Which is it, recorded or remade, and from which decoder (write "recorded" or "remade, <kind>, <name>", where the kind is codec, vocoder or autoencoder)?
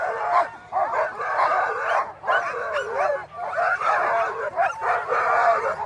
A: recorded